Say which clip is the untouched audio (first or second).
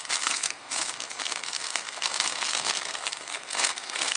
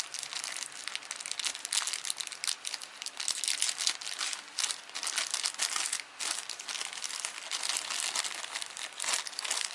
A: second